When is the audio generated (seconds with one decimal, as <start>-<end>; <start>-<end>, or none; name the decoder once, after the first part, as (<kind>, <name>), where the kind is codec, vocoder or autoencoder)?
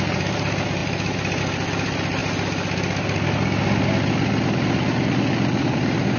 0.0-2.2 (vocoder, BigVGAN v2); 5.6-6.2